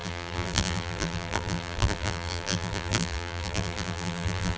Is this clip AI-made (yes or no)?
yes